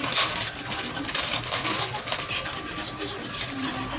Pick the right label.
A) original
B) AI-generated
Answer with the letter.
A